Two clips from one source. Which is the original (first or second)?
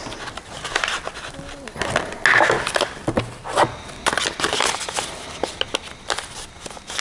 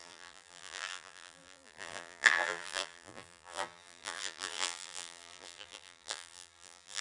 first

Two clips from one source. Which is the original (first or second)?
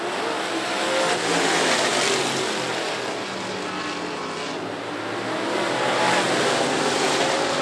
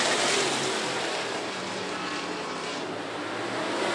first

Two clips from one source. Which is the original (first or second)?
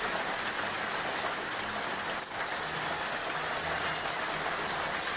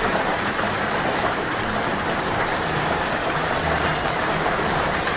first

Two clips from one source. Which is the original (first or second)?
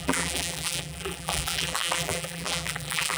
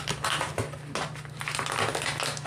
second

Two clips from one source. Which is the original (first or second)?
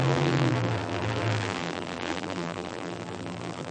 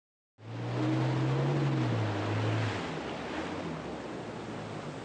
second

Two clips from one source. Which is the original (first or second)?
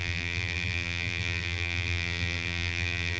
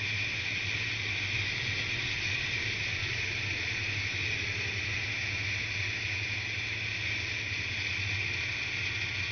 second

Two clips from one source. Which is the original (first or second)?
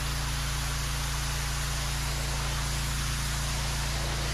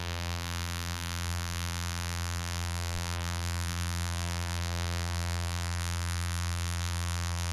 first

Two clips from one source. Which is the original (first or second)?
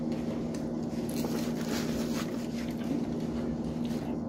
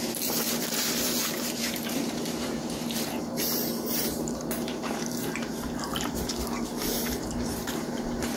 first